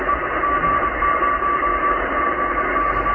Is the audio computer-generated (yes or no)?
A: no